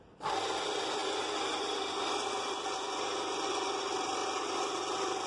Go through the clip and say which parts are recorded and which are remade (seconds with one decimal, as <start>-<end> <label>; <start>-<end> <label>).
0.0-5.3 recorded

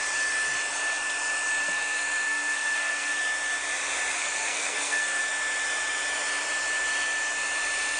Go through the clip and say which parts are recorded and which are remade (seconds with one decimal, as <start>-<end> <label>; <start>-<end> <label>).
0.0-1.6 recorded; 1.6-3.2 remade; 3.2-4.2 recorded; 4.2-5.2 remade; 5.2-8.0 recorded

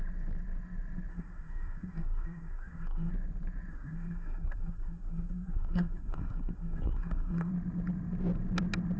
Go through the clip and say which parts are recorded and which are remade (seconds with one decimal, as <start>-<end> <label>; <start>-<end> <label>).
0.0-1.1 recorded; 1.1-3.1 remade; 3.1-3.7 recorded; 3.7-7.5 remade; 7.5-9.0 recorded

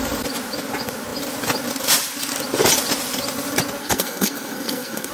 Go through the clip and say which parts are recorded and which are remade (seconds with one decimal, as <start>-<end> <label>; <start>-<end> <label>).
0.0-3.8 recorded; 3.8-5.1 remade

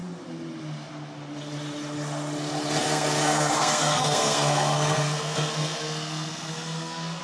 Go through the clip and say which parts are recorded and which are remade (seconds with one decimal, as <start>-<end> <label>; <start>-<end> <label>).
0.0-2.8 recorded; 2.8-7.2 remade